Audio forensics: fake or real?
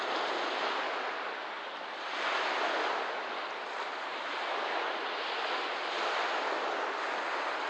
real